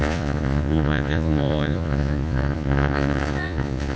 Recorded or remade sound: remade